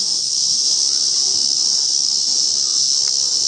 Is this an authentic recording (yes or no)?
yes